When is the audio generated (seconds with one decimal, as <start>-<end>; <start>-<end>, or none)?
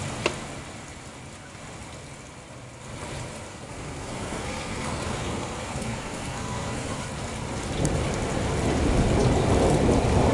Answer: 3.5-7.0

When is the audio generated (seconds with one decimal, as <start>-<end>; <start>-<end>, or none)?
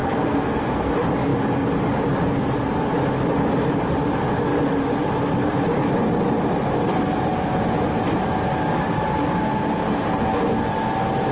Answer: 0.0-0.9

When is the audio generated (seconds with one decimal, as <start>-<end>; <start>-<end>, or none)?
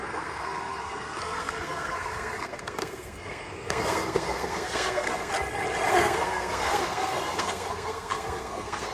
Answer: 0.0-5.3; 5.9-8.9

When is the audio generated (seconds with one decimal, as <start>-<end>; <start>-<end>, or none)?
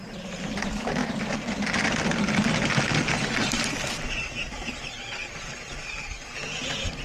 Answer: none